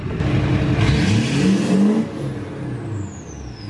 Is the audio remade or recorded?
recorded